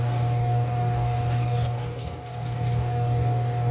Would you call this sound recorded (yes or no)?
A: no